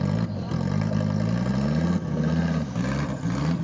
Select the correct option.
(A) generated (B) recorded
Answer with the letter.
B